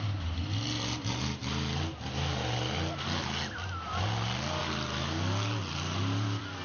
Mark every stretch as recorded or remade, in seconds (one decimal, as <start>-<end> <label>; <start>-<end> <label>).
0.0-6.6 recorded